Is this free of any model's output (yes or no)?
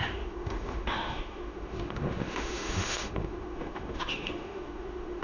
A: no